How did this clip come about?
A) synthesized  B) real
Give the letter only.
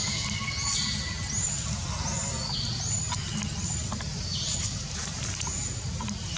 B